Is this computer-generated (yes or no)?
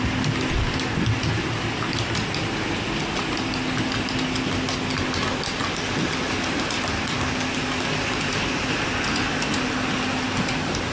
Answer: no